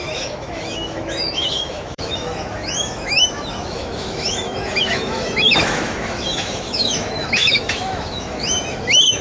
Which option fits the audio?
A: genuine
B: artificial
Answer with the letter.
B